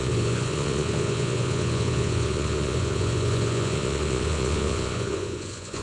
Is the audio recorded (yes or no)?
no